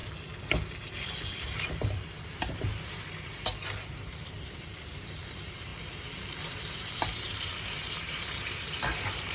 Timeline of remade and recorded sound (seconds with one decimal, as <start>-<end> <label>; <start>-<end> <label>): 0.0-1.3 recorded; 1.3-5.7 remade; 5.7-6.5 recorded; 6.5-9.3 remade